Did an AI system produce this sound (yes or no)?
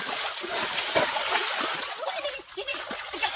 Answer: no